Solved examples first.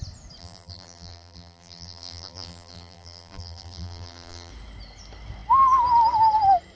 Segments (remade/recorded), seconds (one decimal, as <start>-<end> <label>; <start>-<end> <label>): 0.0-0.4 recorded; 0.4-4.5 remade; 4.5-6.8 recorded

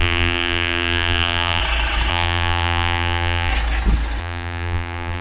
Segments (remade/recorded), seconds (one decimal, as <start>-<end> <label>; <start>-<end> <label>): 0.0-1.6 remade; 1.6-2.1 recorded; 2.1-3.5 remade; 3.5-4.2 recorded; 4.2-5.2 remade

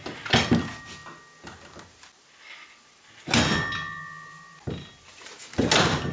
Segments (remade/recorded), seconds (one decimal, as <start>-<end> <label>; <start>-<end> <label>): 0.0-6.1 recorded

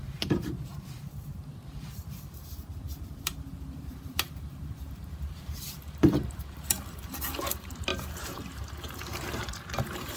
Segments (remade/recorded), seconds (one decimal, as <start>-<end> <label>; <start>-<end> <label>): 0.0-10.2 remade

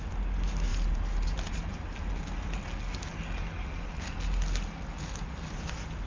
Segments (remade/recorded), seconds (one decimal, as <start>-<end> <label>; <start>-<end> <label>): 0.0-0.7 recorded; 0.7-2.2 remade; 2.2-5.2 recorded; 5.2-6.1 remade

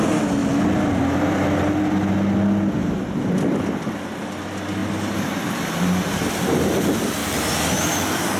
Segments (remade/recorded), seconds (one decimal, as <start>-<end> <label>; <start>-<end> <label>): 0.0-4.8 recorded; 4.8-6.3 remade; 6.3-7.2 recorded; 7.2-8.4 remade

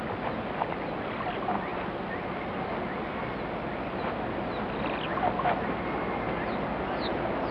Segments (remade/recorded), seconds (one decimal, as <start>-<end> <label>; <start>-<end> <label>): 0.0-7.5 recorded

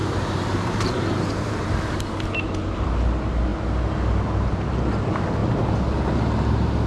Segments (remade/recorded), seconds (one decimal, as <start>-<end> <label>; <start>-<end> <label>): 0.0-2.0 remade; 2.0-6.9 recorded